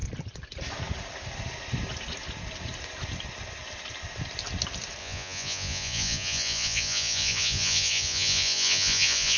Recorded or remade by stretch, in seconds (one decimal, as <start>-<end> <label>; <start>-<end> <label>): 0.0-5.0 recorded; 5.0-9.4 remade